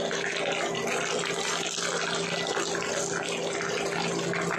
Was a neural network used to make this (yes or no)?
no